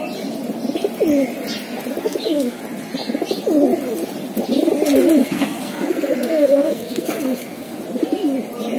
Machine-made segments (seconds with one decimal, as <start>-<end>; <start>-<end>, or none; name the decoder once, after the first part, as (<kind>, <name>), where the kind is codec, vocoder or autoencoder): 2.0-2.6 (codec, SNAC); 5.2-7.8